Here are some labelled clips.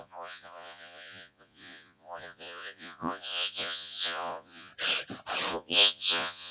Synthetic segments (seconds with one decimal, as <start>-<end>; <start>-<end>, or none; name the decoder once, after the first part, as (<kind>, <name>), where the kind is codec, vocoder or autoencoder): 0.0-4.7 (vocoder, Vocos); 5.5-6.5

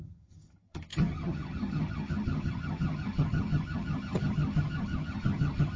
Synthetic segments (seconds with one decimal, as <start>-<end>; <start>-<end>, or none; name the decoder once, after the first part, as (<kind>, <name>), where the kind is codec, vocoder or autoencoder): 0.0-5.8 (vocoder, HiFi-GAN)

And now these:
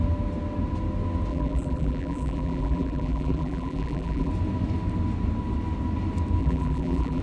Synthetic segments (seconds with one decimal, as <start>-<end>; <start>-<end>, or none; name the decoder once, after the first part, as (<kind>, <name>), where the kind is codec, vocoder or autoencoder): 1.3-4.3 (vocoder, BigVGAN v2); 6.4-7.2

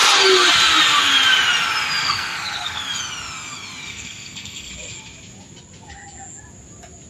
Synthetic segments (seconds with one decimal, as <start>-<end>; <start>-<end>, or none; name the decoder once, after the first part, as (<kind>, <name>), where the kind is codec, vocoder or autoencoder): 2.0-2.8 (codec, SNAC); 3.9-4.7